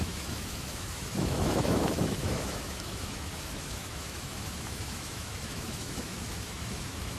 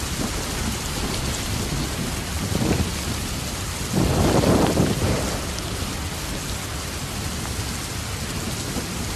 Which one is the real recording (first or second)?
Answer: second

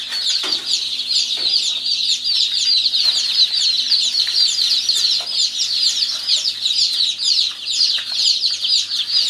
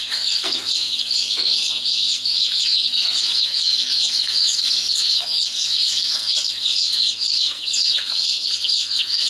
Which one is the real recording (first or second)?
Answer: first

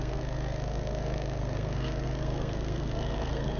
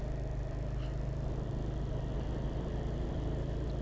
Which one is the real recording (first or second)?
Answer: second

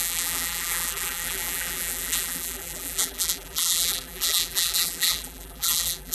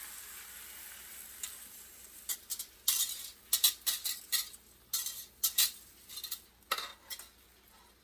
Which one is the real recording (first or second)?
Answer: second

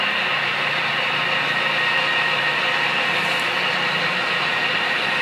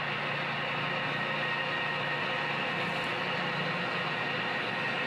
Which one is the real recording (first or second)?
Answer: second